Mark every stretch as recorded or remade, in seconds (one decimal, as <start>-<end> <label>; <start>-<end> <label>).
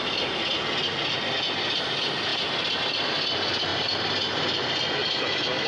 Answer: 0.0-2.3 recorded; 2.3-2.8 remade; 2.8-3.7 recorded; 3.7-4.9 remade; 4.9-5.7 recorded